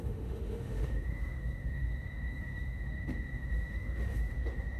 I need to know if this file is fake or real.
fake